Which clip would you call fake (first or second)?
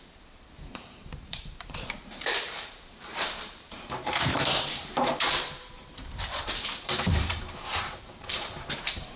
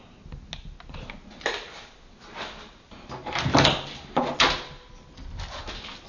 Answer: first